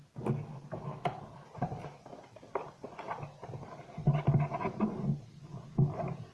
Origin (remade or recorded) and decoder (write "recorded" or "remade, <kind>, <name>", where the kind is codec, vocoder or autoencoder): recorded